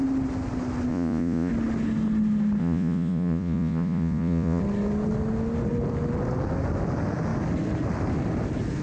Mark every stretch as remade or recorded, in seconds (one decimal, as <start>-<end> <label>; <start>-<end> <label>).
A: 0.0-0.9 recorded; 0.9-1.5 remade; 1.5-2.6 recorded; 2.6-4.6 remade; 4.6-8.8 recorded

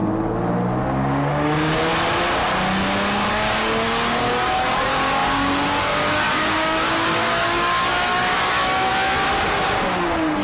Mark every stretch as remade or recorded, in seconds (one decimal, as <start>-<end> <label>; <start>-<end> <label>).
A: 0.0-0.8 recorded; 0.8-1.9 remade; 1.9-3.3 recorded; 3.3-8.9 remade; 8.9-9.4 recorded; 9.4-10.4 remade

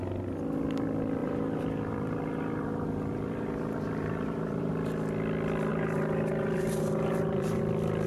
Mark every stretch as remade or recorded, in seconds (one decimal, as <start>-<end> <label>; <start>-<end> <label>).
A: 0.0-1.2 recorded; 1.2-4.7 remade; 4.7-5.7 recorded; 5.7-7.6 remade; 7.6-8.1 recorded

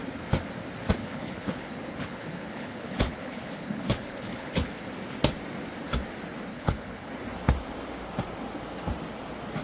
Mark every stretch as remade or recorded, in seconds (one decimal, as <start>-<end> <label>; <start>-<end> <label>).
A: 0.0-1.0 recorded; 1.0-4.7 remade; 4.7-6.5 recorded; 6.5-7.1 remade; 7.1-9.6 recorded

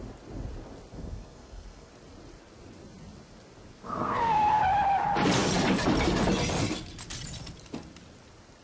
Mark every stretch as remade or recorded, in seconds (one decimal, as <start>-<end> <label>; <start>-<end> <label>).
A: 0.0-0.9 recorded; 0.9-1.9 remade; 1.9-3.7 recorded; 3.7-4.6 remade; 4.6-8.6 recorded